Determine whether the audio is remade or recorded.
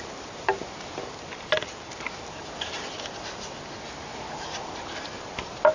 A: recorded